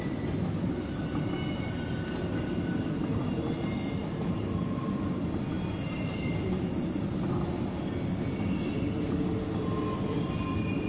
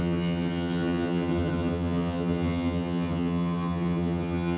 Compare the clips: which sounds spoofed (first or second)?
second